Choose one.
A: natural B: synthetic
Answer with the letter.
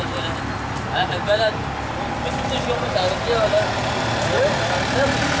A